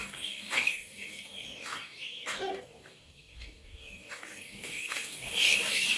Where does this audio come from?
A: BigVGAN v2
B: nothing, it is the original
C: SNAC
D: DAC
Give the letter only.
D